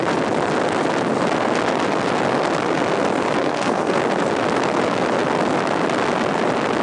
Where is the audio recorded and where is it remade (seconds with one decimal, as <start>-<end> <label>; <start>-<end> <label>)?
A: 0.0-3.4 recorded; 3.4-4.0 remade; 4.0-6.8 recorded